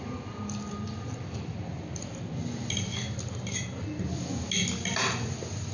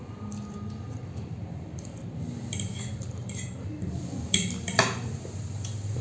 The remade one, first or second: second